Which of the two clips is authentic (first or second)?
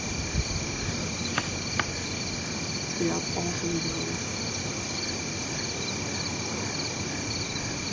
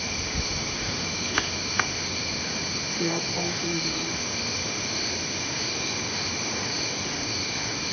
first